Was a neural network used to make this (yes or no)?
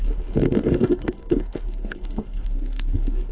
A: yes